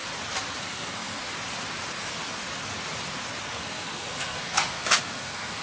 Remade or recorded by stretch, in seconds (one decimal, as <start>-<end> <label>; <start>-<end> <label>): 0.0-0.6 recorded; 0.6-1.2 remade; 1.2-3.4 recorded; 3.4-5.6 remade